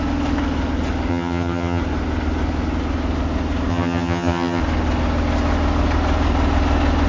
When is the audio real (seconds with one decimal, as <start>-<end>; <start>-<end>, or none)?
0.0-1.1; 1.8-3.7; 4.6-7.1